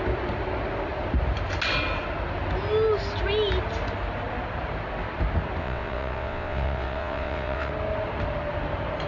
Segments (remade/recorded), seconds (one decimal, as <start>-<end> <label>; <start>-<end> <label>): 0.0-5.6 recorded; 5.6-7.7 remade; 7.7-9.1 recorded